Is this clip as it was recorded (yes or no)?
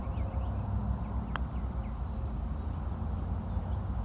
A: yes